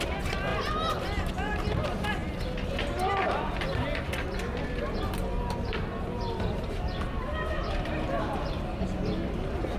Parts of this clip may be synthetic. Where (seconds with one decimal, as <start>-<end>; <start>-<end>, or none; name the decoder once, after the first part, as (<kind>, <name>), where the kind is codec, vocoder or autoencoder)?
0.5-1.0 (vocoder, BigVGAN v2); 7.3-8.4